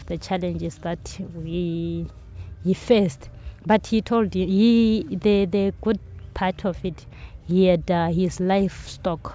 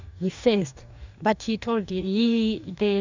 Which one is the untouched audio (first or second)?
first